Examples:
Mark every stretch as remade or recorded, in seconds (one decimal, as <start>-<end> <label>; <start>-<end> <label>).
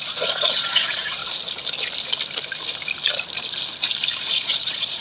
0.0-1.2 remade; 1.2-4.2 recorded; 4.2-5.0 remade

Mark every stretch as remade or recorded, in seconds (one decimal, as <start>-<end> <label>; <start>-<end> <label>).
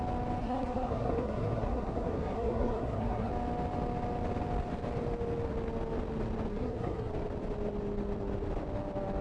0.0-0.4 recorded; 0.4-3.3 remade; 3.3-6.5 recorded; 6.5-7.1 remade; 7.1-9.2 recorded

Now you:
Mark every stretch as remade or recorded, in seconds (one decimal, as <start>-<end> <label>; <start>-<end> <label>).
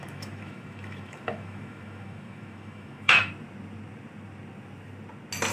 0.0-3.3 remade; 3.3-5.5 recorded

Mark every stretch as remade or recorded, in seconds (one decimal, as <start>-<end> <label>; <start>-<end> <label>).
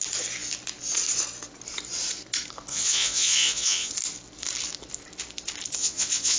0.0-2.7 recorded; 2.7-3.9 remade; 3.9-5.8 recorded; 5.8-6.4 remade